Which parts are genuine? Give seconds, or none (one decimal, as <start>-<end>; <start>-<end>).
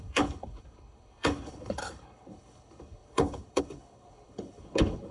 none